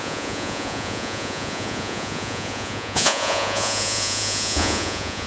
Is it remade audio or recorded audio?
remade